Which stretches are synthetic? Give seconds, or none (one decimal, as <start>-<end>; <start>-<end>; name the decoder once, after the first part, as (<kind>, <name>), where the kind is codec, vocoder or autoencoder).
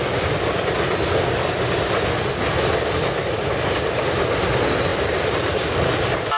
none